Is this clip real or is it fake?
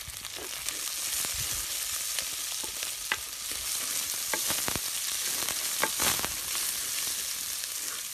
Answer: real